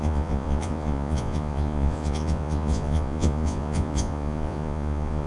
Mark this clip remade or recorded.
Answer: remade